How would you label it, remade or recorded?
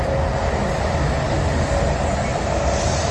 recorded